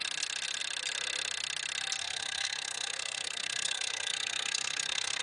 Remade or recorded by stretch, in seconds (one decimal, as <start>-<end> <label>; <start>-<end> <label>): 0.0-2.0 recorded; 2.0-5.2 remade